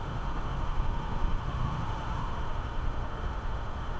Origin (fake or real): fake